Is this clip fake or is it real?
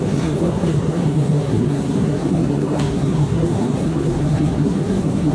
fake